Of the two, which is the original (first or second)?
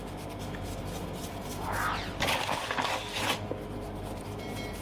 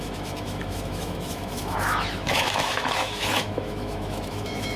first